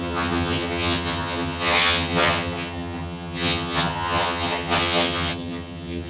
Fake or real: fake